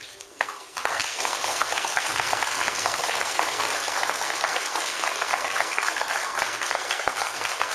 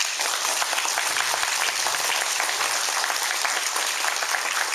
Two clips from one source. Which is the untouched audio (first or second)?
second